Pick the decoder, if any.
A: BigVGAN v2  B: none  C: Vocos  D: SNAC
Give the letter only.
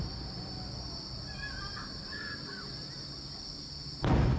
B